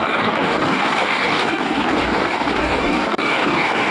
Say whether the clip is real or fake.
fake